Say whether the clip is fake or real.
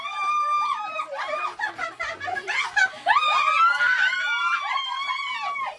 real